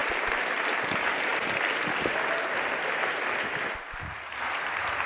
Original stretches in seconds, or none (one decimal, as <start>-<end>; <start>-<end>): 0.0-5.1